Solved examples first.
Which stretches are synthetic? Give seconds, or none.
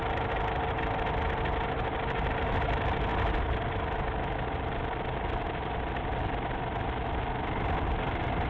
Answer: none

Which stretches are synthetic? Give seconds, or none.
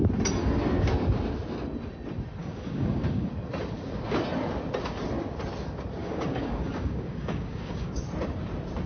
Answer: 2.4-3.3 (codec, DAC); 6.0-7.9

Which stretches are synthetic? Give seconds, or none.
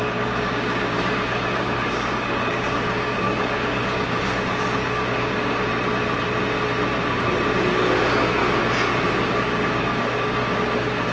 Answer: 0.0-5.7 (codec, DAC); 7.7-8.4; 9.3-11.1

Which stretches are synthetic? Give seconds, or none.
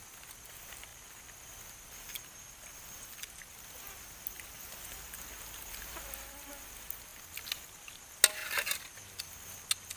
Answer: none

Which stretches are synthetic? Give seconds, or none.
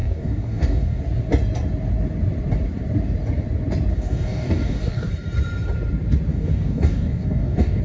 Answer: 0.0-1.0 (codec, DAC); 3.9-5.1; 6.3-7.8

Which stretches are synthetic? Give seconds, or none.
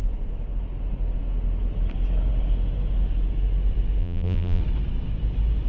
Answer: 4.0-4.6 (vocoder, BigVGAN v2)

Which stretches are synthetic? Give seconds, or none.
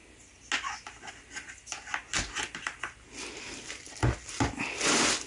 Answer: none